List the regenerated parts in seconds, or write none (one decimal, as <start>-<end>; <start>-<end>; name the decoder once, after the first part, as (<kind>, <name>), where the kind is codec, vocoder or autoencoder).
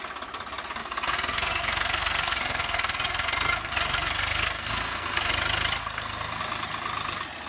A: 0.8-5.3 (codec, SNAC); 5.8-6.4